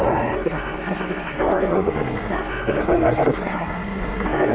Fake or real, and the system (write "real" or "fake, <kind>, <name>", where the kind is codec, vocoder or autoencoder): fake, codec, SNAC